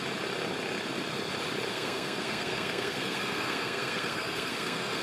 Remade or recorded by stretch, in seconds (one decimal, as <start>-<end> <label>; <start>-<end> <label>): 0.0-1.7 recorded; 1.7-5.0 remade